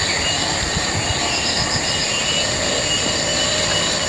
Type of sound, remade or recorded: recorded